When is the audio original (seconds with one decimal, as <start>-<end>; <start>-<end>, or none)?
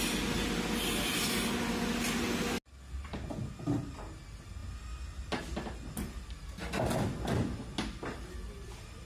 0.0-9.1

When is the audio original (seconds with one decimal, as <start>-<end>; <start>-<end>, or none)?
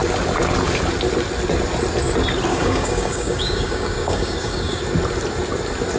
0.0-2.5; 4.8-6.0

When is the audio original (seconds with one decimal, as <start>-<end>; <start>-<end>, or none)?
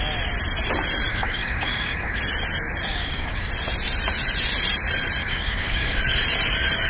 0.0-1.1; 2.2-2.9; 3.5-5.2; 6.0-6.9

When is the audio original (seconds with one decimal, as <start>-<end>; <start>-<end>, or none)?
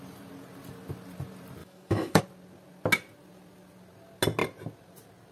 0.0-1.6; 2.2-5.3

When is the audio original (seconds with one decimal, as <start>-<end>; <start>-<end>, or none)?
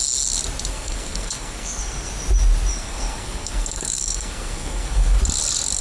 0.0-0.7; 2.1-2.7; 5.2-5.8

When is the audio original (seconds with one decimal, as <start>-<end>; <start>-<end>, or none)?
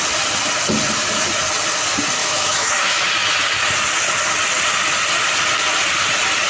0.0-2.2; 3.1-6.5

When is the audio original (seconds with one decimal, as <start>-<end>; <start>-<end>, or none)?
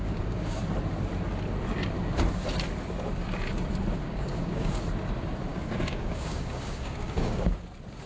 0.6-4.0; 4.8-5.5; 7.6-8.1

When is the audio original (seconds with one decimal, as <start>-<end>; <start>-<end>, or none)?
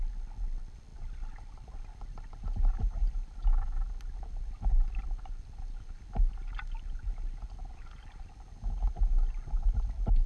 0.0-10.3